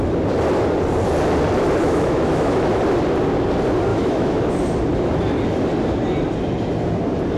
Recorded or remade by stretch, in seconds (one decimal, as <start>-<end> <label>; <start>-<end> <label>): 0.0-1.8 recorded; 1.8-2.8 remade; 2.8-3.9 recorded; 3.9-4.5 remade; 4.5-7.4 recorded